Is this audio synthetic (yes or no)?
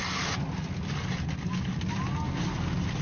no